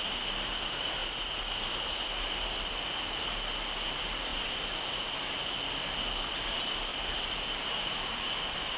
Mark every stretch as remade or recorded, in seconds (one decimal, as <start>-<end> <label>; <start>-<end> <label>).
0.0-1.0 remade; 1.0-3.6 recorded; 3.6-4.3 remade; 4.3-6.3 recorded; 6.3-6.9 remade; 6.9-7.7 recorded; 7.7-8.8 remade